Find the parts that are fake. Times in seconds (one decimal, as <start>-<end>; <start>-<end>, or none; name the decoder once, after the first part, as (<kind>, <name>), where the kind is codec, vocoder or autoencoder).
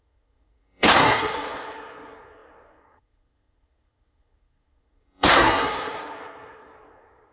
0.0-7.3 (codec, SNAC)